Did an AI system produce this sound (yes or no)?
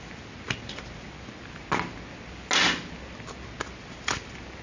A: no